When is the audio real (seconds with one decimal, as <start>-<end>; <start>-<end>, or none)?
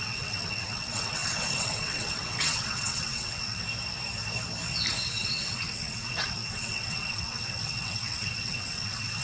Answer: 3.6-5.2